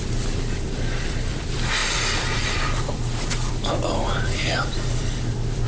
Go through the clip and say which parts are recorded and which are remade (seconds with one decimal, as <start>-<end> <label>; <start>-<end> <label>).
0.0-5.7 remade